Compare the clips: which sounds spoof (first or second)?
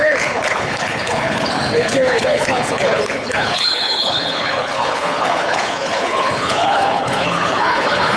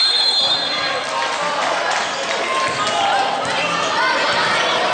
first